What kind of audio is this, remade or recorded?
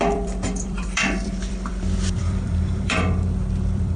remade